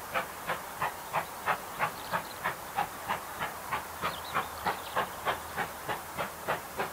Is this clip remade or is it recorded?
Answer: remade